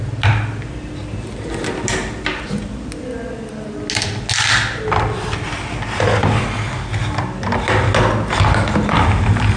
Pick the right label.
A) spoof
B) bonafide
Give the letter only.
B